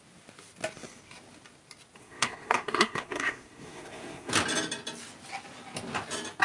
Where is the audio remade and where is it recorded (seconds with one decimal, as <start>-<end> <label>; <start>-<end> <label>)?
0.0-2.0 recorded; 2.0-4.3 remade; 4.3-6.4 recorded

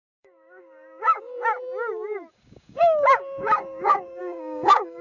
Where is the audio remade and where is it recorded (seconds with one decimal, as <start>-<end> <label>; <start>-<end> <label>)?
0.0-1.3 remade; 1.3-2.3 recorded; 2.3-5.0 remade